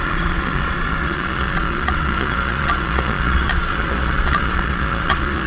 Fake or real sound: fake